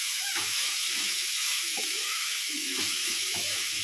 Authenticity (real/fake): fake